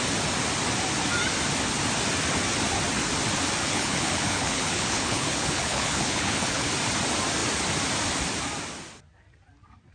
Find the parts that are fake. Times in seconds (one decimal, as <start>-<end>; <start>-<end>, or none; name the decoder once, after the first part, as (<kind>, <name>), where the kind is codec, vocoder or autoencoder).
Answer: 3.6-6.7 (codec, HILCodec)

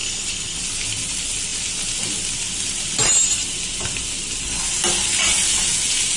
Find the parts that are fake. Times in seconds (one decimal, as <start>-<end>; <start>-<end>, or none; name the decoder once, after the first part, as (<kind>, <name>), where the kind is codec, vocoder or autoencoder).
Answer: 0.0-0.6 (codec, HILCodec)

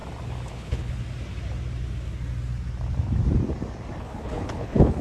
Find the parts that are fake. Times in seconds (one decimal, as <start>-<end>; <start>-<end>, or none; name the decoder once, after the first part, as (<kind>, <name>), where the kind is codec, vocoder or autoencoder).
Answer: 0.5-1.0 (codec, HILCodec); 4.0-5.0

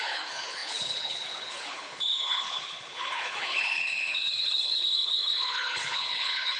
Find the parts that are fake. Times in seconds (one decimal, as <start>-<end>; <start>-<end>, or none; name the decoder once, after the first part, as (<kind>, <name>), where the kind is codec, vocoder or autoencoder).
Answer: 0.0-6.6 (codec, HILCodec)